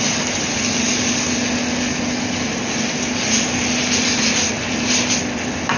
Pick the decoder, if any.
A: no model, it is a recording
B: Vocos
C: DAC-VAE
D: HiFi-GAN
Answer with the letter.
A